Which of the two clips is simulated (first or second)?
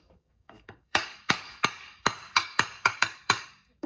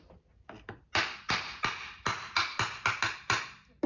first